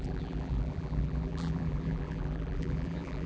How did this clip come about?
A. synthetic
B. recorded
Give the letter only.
A